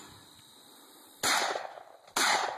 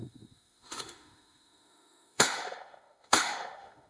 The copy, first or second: second